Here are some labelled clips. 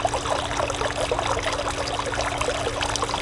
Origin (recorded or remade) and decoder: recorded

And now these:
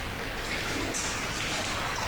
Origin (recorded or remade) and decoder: remade, codec, DAC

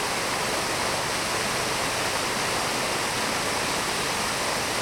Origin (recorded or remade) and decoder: recorded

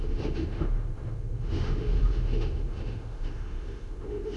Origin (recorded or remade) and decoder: remade, autoencoder, DAC-VAE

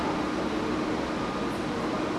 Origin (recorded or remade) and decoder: recorded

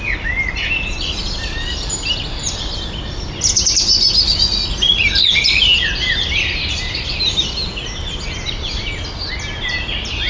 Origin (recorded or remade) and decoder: recorded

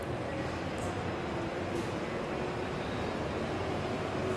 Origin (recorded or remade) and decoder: recorded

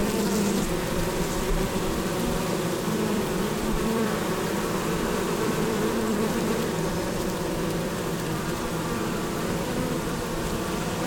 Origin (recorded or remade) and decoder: remade, vocoder, BigVGAN v2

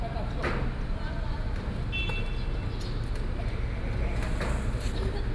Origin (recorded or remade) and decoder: recorded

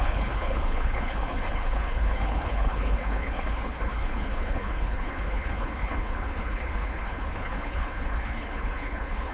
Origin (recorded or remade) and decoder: remade, codec, HILCodec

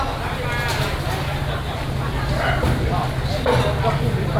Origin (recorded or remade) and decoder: recorded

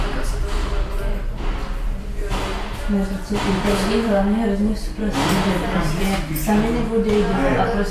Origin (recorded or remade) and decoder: recorded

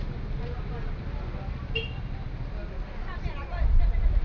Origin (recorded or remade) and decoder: recorded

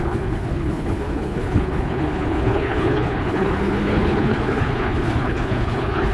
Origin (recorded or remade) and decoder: remade, codec, HILCodec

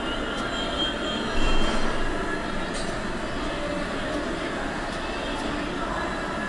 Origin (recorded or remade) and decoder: recorded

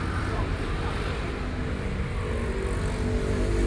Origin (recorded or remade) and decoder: recorded